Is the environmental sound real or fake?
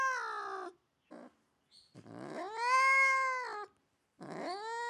real